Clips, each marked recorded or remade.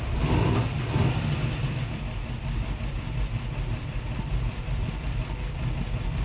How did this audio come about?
remade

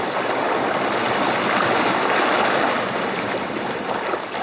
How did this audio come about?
recorded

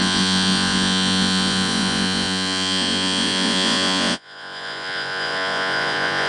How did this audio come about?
remade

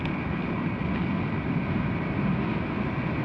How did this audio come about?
recorded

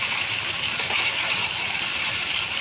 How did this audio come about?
remade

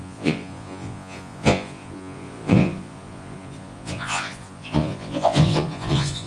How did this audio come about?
remade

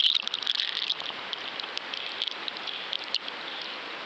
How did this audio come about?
recorded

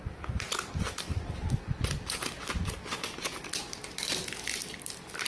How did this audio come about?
recorded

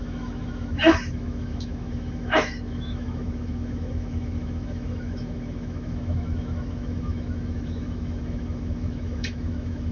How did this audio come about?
remade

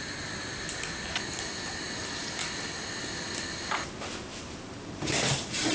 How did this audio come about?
recorded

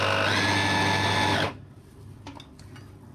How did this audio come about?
recorded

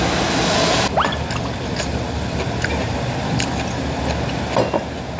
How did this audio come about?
recorded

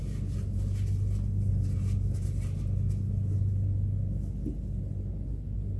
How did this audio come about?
recorded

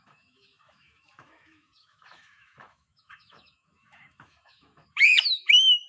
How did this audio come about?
remade